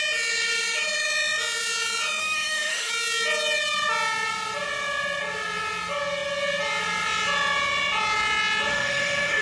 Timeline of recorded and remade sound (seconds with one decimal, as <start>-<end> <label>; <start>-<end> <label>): 0.0-2.2 recorded; 2.2-2.9 remade; 2.9-8.7 recorded; 8.7-9.4 remade